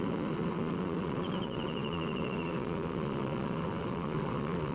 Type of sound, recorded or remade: remade